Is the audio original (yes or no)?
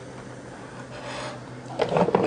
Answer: yes